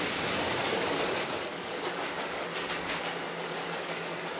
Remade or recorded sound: remade